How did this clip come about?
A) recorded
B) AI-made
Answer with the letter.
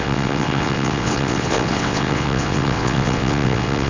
B